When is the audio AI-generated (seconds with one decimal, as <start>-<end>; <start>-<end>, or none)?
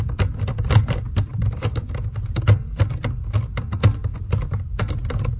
none